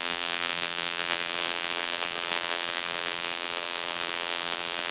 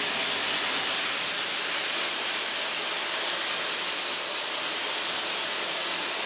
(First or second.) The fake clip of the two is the first